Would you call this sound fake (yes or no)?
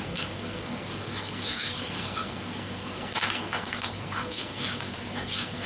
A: yes